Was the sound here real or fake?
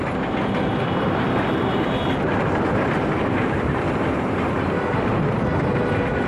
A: fake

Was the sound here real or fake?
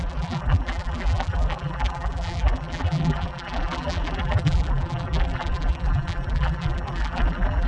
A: fake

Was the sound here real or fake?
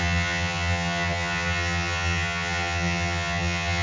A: fake